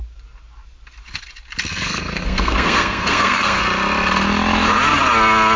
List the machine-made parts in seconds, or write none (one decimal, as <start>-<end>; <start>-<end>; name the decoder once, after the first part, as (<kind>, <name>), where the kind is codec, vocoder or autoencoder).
1.7-3.6 (codec, SNAC)

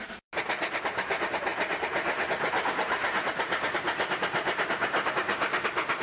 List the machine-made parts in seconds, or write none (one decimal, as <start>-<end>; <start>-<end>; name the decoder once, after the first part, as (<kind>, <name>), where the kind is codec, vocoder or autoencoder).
none